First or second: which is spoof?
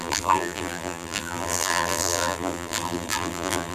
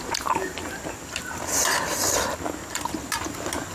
first